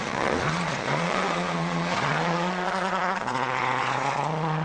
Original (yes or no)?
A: no